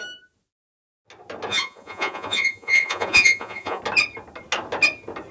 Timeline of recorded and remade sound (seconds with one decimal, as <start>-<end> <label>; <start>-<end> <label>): 0.0-1.5 recorded; 1.5-3.8 remade; 3.8-5.3 recorded